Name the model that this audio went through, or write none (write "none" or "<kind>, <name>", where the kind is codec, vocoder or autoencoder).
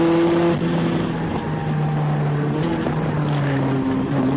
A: none